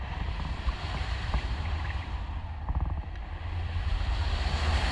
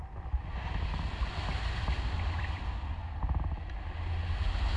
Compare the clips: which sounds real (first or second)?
second